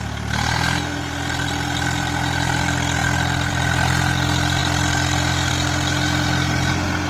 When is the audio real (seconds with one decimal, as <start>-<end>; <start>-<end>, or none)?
0.0-7.1